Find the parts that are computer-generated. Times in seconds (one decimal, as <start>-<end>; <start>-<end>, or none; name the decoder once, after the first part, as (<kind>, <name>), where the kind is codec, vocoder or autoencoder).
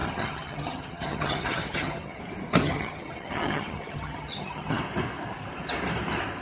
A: 0.0-2.2 (vocoder, HiFi-GAN); 2.6-4.8